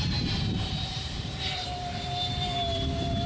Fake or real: fake